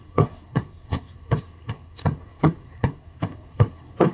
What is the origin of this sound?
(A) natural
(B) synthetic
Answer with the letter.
B